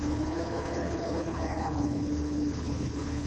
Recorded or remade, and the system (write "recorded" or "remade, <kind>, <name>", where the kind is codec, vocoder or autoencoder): remade, codec, HILCodec